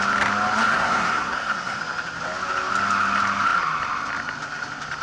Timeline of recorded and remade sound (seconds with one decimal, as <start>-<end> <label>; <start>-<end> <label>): 0.0-0.7 recorded; 0.7-1.8 remade; 1.8-5.0 recorded